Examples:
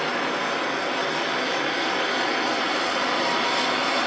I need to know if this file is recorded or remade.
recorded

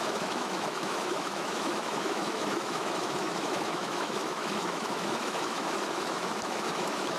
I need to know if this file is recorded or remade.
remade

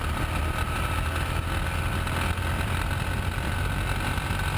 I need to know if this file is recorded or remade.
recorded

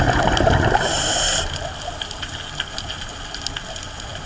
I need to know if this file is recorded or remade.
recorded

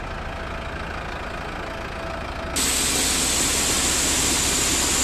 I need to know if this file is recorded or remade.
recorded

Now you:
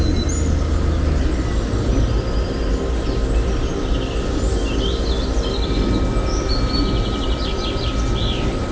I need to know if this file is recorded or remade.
recorded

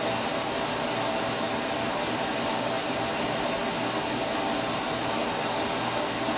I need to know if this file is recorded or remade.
recorded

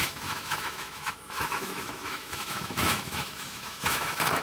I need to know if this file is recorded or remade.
remade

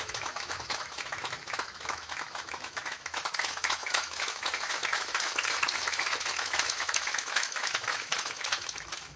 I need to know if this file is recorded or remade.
remade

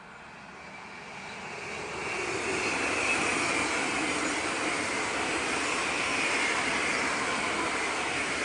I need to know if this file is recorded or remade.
recorded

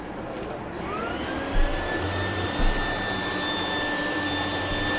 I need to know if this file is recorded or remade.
recorded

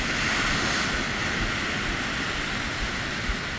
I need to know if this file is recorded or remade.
recorded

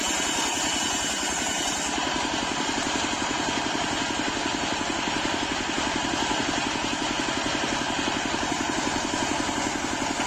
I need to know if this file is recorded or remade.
recorded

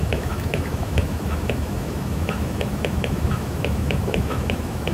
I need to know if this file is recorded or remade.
remade